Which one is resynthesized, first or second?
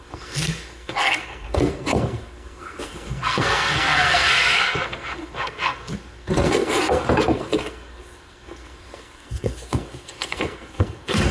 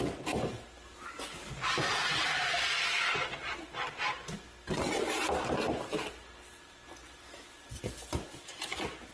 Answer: first